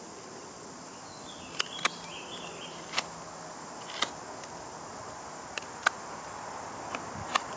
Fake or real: real